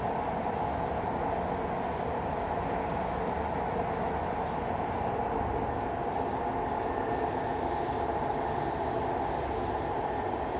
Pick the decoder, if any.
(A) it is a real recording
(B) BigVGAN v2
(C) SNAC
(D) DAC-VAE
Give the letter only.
A